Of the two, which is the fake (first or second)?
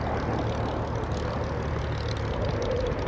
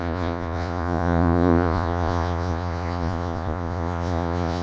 second